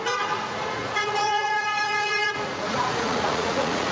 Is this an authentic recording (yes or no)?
no